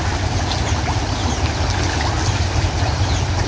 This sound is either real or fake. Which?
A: real